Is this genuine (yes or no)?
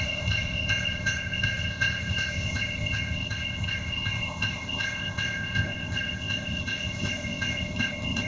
no